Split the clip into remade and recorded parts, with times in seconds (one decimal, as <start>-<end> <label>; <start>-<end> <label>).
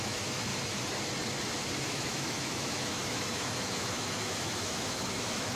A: 0.0-0.5 remade; 0.5-1.8 recorded; 1.8-5.6 remade